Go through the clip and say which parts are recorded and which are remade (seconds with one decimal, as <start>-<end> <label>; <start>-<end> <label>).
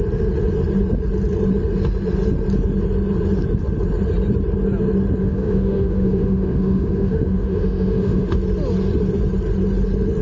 0.0-5.2 recorded; 5.2-8.3 remade; 8.3-10.2 recorded